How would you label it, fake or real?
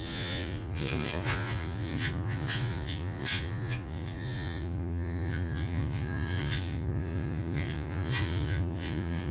fake